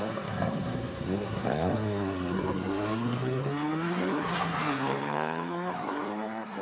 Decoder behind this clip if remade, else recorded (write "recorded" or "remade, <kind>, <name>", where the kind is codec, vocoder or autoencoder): remade, codec, SNAC